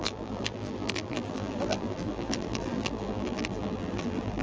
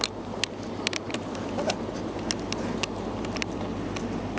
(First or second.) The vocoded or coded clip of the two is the first